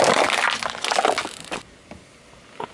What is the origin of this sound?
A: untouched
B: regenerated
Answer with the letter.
A